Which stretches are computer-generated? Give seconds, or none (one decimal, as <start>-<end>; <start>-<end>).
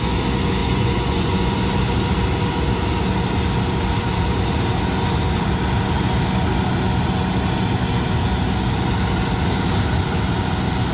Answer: 0.6-1.6